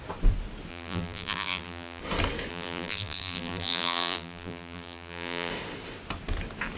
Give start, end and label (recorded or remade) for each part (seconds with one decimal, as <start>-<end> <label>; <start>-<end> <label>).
0.0-0.7 recorded; 0.7-2.0 remade; 2.0-2.5 recorded; 2.5-5.5 remade; 5.5-6.8 recorded